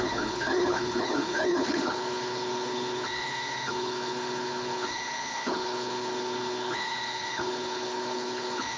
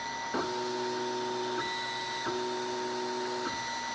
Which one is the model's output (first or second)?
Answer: first